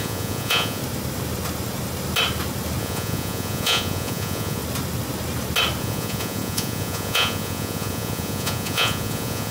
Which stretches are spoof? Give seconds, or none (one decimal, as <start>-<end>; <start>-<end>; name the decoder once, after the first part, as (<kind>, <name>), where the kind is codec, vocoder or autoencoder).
0.0-0.8 (vocoder, Vocos); 2.8-4.6; 5.8-9.5